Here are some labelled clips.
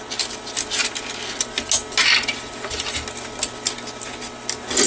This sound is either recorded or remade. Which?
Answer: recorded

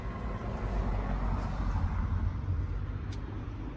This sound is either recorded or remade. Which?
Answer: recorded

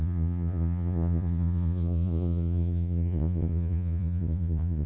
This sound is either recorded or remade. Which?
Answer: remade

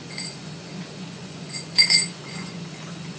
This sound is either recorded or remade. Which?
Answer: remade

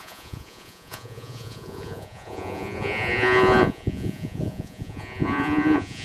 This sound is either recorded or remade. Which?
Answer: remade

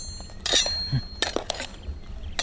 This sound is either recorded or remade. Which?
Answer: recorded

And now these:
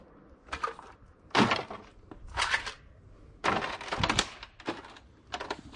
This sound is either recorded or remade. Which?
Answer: recorded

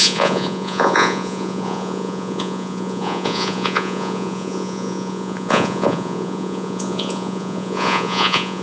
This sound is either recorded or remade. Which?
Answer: remade